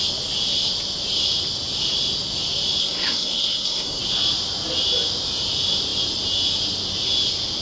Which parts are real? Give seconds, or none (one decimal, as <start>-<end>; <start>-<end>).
0.0-2.8; 4.0-7.6